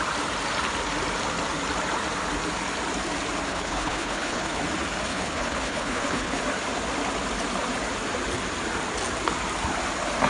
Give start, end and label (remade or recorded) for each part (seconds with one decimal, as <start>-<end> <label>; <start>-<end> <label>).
0.0-3.5 recorded; 3.5-4.6 remade; 4.6-5.1 recorded; 5.1-6.4 remade; 6.4-10.3 recorded